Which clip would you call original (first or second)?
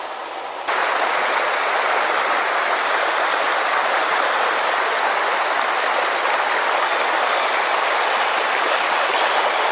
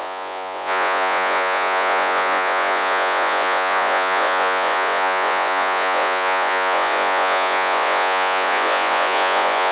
first